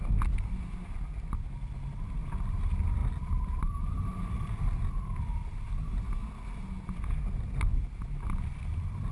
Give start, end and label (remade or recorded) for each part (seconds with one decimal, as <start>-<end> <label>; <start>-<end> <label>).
0.0-9.1 recorded